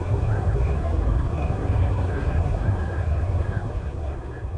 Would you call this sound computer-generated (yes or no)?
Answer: yes